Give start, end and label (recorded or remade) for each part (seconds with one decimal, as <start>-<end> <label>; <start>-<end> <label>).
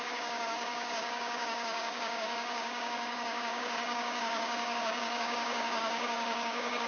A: 0.0-6.9 remade